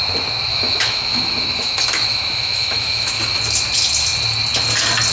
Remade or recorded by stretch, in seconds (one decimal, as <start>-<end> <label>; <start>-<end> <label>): 0.0-0.5 recorded; 0.5-3.4 remade; 3.4-5.1 recorded